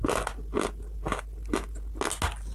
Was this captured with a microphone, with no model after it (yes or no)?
yes